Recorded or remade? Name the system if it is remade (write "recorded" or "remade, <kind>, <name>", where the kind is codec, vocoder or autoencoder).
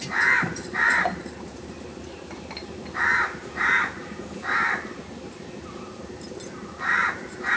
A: remade, vocoder, BigVGAN v2